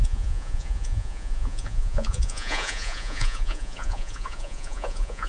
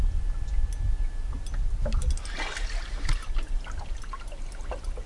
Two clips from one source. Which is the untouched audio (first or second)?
second